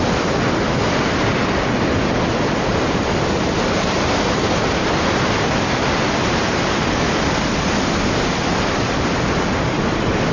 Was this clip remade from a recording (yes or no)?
no